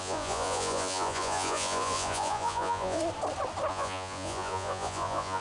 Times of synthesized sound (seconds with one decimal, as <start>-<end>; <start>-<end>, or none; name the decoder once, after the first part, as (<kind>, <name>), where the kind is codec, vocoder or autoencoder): 0.0-3.0 (vocoder, Vocos); 3.7-5.4